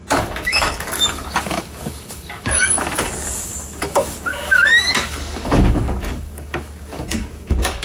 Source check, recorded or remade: remade